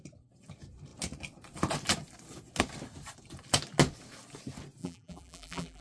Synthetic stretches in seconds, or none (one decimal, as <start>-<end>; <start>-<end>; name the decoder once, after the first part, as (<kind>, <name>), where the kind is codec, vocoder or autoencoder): 4.8-5.8 (vocoder, BigVGAN v2)